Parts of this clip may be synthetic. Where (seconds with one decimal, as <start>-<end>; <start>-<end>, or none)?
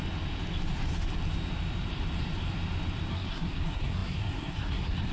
3.1-5.1